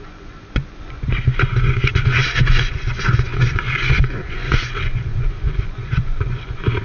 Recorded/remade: remade